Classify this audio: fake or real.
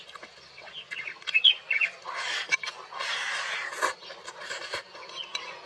real